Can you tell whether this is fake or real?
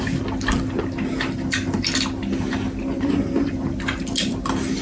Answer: real